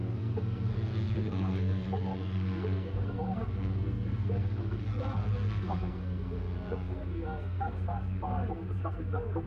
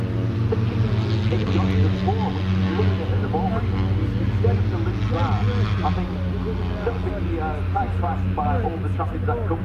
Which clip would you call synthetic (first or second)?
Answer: first